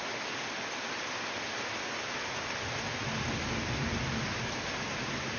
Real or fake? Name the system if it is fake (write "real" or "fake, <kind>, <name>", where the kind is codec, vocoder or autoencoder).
real